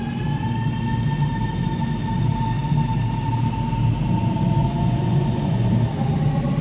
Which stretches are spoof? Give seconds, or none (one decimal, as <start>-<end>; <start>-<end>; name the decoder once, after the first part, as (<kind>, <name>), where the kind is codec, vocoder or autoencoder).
4.6-5.7 (vocoder, Vocos)